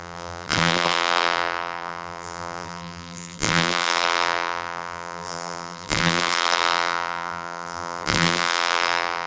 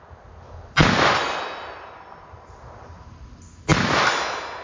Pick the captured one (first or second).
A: second